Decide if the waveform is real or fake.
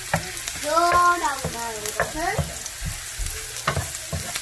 real